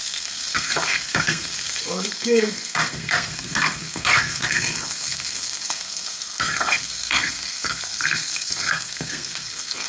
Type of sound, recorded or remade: remade